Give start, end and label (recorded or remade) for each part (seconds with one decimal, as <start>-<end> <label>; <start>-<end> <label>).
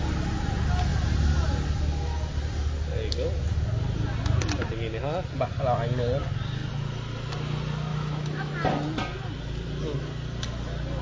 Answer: 0.0-7.9 recorded; 7.9-8.5 remade; 8.5-11.0 recorded